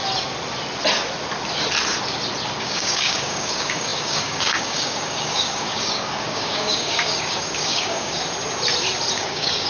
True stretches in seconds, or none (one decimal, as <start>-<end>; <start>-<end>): 0.0-2.6; 8.2-9.1

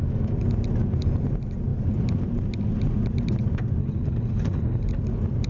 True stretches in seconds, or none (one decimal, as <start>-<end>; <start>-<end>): 0.0-3.8; 4.9-5.5

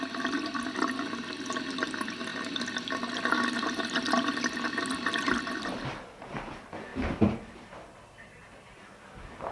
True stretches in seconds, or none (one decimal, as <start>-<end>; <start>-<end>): 0.0-9.5

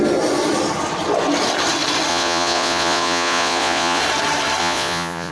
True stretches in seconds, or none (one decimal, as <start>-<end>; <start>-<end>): 0.0-2.1; 4.0-4.6

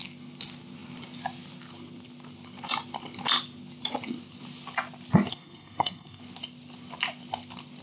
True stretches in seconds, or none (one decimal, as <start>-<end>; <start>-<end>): 0.0-5.3; 6.2-7.8

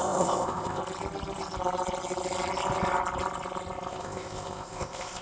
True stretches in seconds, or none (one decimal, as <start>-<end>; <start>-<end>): 0.8-3.9